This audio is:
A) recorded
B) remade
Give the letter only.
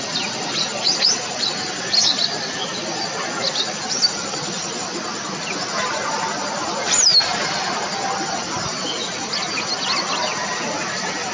A